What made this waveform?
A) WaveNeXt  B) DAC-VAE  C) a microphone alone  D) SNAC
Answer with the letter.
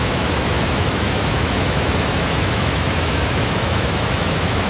B